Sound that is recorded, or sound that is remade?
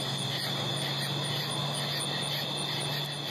recorded